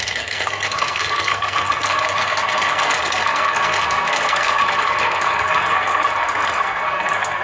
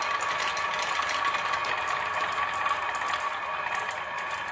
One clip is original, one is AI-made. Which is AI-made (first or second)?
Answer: first